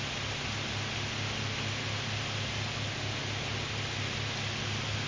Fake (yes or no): no